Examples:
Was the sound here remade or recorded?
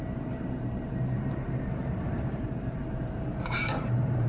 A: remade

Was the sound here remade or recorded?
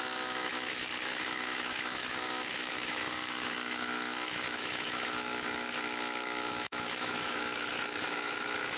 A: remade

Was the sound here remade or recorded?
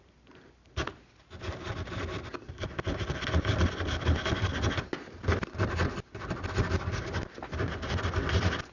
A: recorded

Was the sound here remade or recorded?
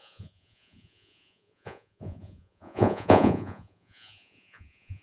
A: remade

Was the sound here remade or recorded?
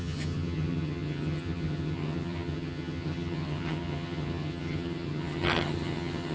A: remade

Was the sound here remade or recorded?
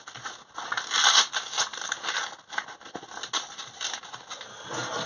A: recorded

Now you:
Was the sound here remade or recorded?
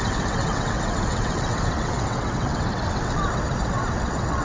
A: remade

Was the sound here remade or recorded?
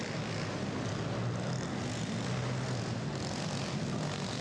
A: recorded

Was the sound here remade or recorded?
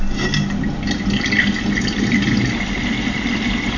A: recorded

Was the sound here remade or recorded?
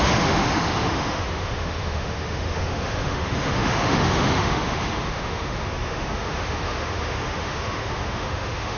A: remade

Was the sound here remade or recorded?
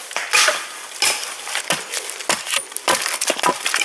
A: recorded